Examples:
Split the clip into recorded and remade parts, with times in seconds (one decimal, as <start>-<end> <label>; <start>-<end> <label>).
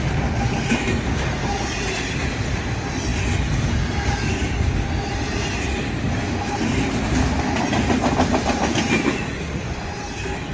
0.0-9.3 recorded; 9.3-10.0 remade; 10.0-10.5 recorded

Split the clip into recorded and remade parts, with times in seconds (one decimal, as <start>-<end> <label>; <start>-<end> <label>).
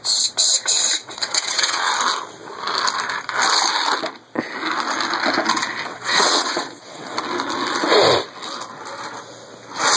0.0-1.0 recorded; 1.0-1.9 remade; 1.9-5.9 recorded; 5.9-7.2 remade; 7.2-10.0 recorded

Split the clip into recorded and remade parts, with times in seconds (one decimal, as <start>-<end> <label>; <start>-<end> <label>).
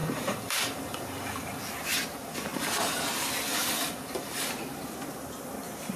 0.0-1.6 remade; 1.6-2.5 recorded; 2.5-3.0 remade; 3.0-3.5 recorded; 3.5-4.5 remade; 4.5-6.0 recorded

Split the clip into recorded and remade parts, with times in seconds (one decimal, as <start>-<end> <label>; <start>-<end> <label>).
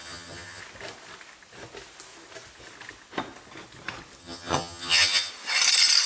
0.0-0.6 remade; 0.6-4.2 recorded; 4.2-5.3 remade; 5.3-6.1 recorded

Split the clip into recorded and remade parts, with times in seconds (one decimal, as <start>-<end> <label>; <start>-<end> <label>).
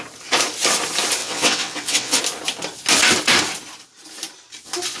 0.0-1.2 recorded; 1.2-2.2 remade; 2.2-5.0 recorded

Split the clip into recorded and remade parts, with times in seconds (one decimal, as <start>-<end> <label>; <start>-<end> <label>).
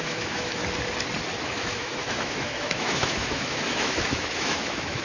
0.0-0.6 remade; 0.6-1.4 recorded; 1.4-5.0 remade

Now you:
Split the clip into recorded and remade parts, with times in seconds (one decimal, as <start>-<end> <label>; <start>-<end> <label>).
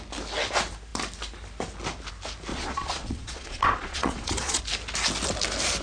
0.0-2.5 recorded; 2.5-4.6 remade; 4.6-5.8 recorded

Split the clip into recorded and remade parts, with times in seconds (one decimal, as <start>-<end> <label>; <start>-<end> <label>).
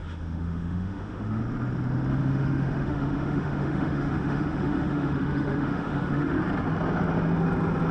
0.0-1.4 remade; 1.4-2.1 recorded; 2.1-6.4 remade; 6.4-7.9 recorded